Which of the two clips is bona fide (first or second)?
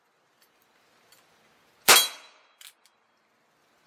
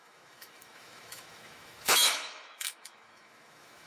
first